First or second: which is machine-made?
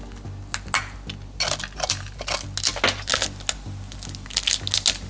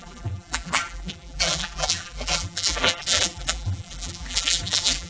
second